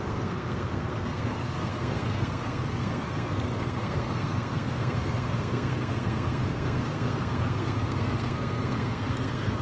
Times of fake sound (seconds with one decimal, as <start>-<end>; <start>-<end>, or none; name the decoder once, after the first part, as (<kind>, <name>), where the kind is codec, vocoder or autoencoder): 0.0-9.6 (codec, SNAC)